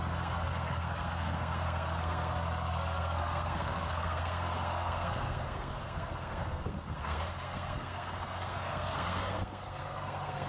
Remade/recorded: remade